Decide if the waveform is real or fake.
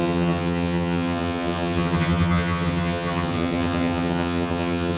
fake